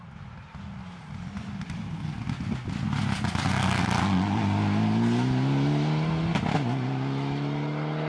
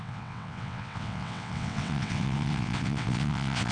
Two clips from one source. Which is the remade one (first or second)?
second